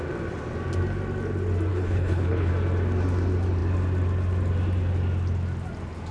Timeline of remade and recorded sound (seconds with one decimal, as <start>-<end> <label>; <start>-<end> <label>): 0.0-1.7 recorded; 1.7-2.5 remade; 2.5-6.1 recorded